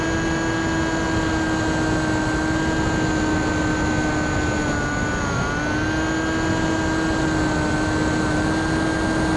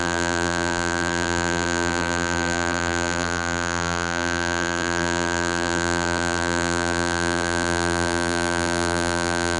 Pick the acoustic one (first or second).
first